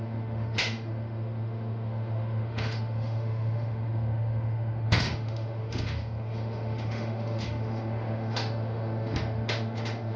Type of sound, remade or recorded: remade